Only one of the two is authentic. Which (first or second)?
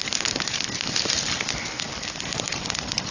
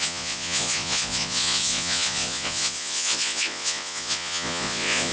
first